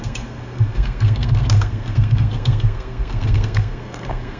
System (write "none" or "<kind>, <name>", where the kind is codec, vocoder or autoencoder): codec, SNAC